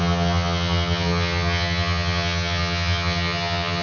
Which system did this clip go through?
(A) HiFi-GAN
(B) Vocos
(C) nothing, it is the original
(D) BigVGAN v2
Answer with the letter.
A